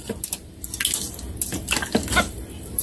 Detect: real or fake real